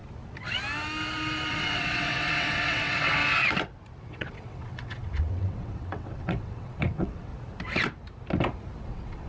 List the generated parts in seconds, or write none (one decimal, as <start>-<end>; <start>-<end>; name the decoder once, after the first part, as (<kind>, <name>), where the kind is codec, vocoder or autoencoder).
1.5-3.2 (vocoder, WaveNeXt); 4.0-7.3; 8.8-9.3